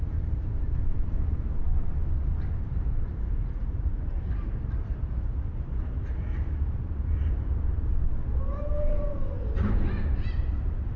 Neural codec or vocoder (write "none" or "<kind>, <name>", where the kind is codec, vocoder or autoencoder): vocoder, BigVGAN v2